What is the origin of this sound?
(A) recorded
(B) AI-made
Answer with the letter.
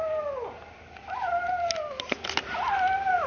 A